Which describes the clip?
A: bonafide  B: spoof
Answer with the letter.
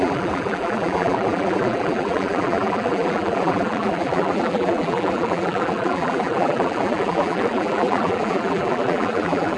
B